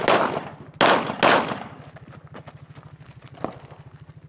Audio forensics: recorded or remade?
recorded